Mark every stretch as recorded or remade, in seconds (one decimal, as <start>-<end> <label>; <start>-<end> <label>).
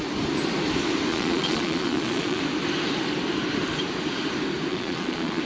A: 0.0-1.1 recorded; 1.1-2.4 remade; 2.4-4.7 recorded; 4.7-5.4 remade